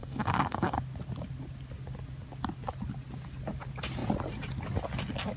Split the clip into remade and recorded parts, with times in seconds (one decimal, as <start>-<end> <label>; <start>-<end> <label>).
0.0-0.8 remade; 0.8-5.4 recorded

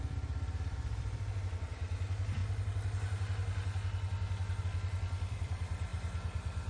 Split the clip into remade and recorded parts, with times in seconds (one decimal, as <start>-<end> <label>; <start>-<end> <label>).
0.0-2.4 remade; 2.4-4.6 recorded; 4.6-5.9 remade; 5.9-6.7 recorded

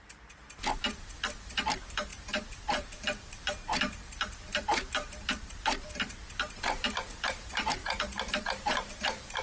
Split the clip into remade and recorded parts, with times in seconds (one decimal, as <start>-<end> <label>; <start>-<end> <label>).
0.0-7.8 remade; 7.8-8.6 recorded; 8.6-9.4 remade

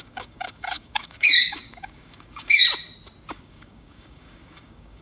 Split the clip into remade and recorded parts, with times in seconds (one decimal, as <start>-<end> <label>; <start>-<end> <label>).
0.0-2.6 remade; 2.6-3.3 recorded; 3.3-5.0 remade

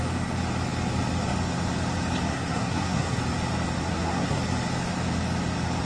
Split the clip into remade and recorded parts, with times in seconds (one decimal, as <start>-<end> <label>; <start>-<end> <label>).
0.0-2.3 recorded; 2.3-3.2 remade; 3.2-3.8 recorded; 3.8-4.4 remade; 4.4-5.9 recorded